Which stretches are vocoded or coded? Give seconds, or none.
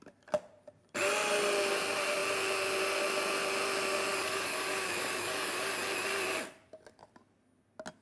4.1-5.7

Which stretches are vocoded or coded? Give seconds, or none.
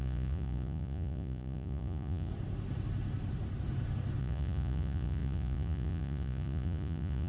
0.0-2.3; 4.2-7.3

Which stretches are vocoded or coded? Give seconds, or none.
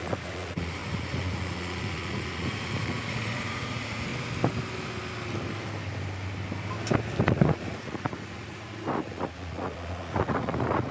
0.0-4.1; 7.2-10.9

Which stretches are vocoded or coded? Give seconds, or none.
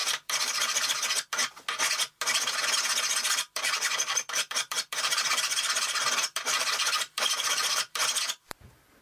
0.0-1.3; 3.2-8.0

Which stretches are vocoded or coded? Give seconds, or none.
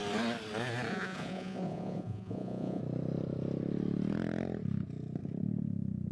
0.9-2.8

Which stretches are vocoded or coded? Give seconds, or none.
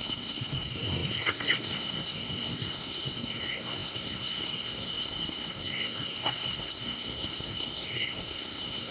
0.0-8.9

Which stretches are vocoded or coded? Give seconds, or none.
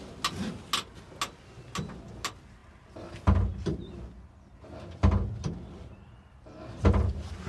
none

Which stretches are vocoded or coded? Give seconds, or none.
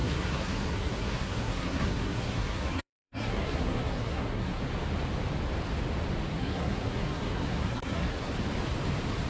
0.0-4.6; 6.3-8.3